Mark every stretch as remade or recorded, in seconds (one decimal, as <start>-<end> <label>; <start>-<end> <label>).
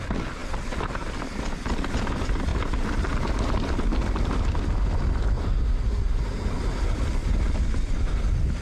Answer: 0.0-0.4 recorded; 0.4-1.4 remade; 1.4-2.5 recorded; 2.5-4.4 remade; 4.4-7.2 recorded; 7.2-8.2 remade; 8.2-8.6 recorded